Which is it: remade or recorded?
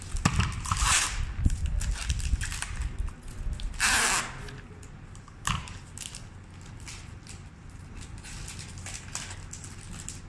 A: recorded